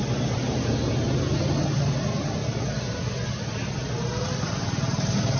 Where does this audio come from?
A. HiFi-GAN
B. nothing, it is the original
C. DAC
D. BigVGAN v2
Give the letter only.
B